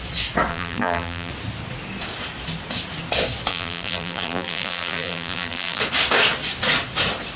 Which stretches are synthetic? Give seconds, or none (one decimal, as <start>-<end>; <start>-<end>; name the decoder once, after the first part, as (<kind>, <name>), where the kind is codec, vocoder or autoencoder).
0.5-1.3 (vocoder, BigVGAN v2); 3.5-5.8